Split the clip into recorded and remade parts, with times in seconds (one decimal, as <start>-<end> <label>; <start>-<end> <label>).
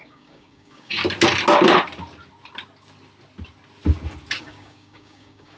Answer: 0.0-1.0 remade; 1.0-4.4 recorded; 4.4-5.6 remade